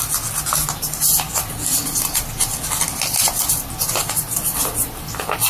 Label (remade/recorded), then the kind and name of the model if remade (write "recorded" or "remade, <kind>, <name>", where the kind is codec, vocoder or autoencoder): recorded